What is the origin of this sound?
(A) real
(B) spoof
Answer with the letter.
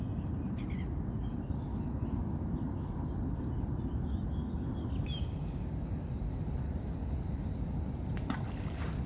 A